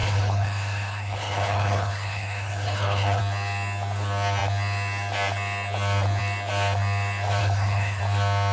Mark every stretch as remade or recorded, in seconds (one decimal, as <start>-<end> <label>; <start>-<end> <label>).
0.0-3.2 remade; 3.2-7.4 recorded; 7.4-8.0 remade; 8.0-8.5 recorded